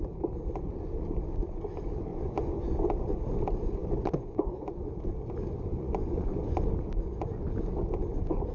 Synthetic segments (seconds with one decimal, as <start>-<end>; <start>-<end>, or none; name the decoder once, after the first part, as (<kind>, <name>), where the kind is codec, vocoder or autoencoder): 2.1-2.7 (vocoder, Vocos); 3.8-4.9; 5.7-6.6